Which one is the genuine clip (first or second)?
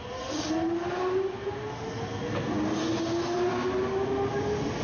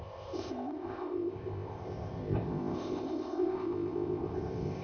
first